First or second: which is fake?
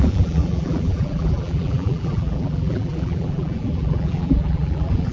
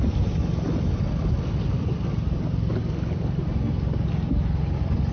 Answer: first